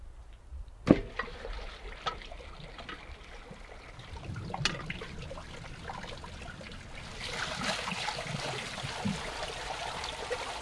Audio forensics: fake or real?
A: real